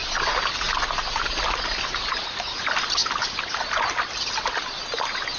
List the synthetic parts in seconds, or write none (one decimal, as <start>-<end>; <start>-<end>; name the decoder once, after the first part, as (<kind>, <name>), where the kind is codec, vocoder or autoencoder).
none

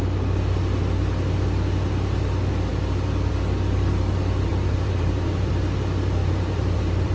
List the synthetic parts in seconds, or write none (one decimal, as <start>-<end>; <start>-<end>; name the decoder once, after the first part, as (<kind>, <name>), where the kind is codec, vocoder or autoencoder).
4.5-5.5 (vocoder, BigVGAN v2); 6.2-7.1

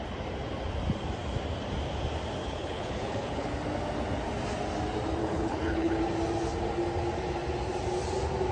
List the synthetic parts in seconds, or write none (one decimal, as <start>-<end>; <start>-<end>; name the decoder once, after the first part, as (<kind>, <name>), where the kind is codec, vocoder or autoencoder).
2.4-3.5 (codec, HILCodec); 5.2-6.0

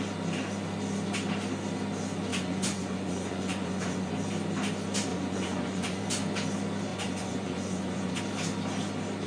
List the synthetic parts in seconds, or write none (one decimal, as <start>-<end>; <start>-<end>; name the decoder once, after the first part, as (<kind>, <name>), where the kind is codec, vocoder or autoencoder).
2.3-4.1 (vocoder, Vocos); 5.1-6.0; 6.9-8.2

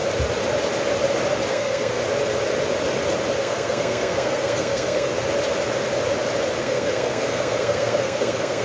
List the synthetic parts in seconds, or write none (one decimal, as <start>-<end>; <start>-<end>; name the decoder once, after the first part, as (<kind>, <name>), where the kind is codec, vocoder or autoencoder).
1.5-2.0 (codec, SNAC); 3.4-5.1; 6.6-8.6

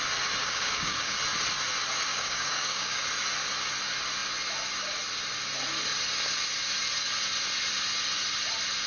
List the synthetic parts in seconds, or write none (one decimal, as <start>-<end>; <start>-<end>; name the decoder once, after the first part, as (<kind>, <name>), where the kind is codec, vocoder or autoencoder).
0.4-1.2 (codec, DAC); 2.1-3.0